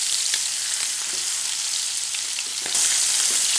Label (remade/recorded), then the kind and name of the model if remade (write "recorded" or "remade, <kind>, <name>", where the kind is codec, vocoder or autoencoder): recorded